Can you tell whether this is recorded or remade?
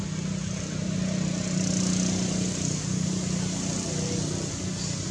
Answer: recorded